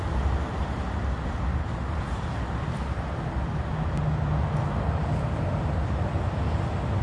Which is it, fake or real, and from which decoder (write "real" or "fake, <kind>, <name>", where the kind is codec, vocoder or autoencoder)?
real